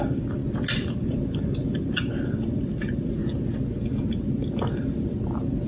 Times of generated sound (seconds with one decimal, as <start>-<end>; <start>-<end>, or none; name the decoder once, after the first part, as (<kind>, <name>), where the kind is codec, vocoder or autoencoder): 0.0-0.4 (vocoder, BigVGAN v2); 1.0-3.2; 4.1-5.7